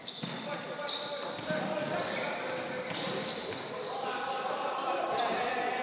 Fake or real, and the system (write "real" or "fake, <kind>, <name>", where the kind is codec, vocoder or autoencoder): real